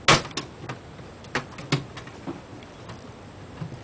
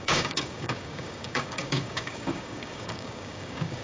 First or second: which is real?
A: first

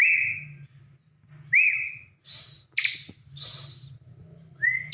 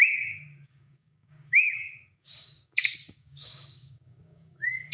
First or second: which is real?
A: first